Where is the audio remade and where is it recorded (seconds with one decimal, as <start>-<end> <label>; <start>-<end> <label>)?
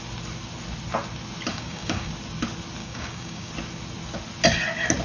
0.0-1.5 recorded; 1.5-2.1 remade; 2.1-2.8 recorded; 2.8-3.5 remade; 3.5-5.0 recorded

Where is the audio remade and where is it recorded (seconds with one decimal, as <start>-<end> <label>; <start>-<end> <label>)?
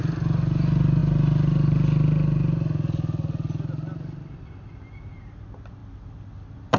0.0-6.8 recorded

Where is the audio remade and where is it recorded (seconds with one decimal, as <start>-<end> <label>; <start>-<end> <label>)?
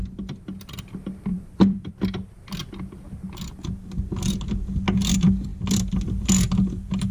0.0-1.3 recorded; 1.3-1.9 remade; 1.9-7.1 recorded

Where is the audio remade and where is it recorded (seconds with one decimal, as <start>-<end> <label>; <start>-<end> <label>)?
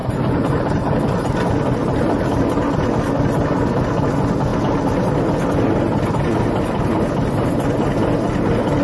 0.0-1.0 remade; 1.0-1.8 recorded; 1.8-2.4 remade; 2.4-8.8 recorded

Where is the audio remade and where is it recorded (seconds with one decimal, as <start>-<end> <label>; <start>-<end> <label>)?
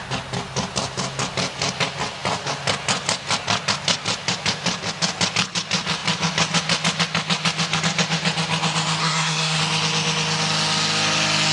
0.0-9.0 recorded; 9.0-9.6 remade; 9.6-11.5 recorded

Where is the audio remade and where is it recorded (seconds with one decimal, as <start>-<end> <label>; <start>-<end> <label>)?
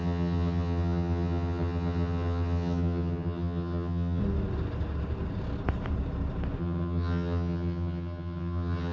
0.0-4.2 remade; 4.2-6.6 recorded; 6.6-8.9 remade